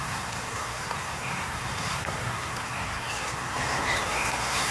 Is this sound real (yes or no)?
no